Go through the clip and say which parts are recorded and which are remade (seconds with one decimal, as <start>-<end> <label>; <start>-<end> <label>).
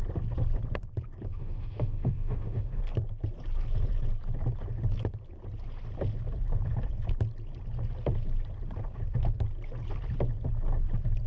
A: 0.0-1.3 recorded; 1.3-2.8 remade; 2.8-11.3 recorded